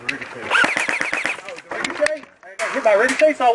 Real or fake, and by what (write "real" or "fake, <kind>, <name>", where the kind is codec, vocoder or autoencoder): real